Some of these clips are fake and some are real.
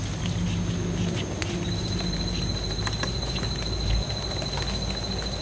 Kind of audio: real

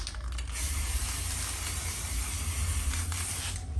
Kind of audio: real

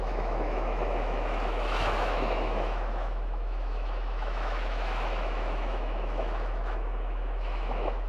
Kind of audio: fake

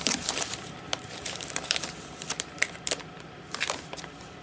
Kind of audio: fake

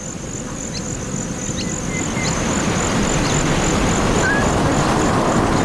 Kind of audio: real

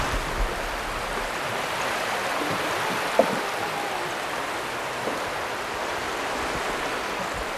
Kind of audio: real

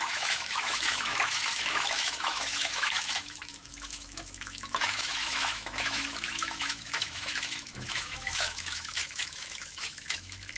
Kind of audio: fake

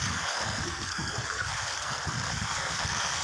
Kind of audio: fake